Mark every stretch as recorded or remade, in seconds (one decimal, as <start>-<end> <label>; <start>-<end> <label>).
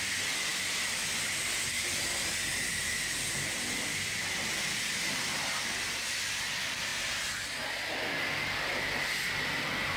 0.0-10.0 recorded